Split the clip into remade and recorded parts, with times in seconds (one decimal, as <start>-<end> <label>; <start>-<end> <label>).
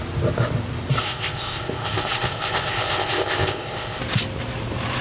0.0-1.0 recorded; 1.0-4.0 remade; 4.0-5.0 recorded